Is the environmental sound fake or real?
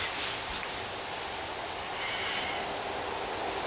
real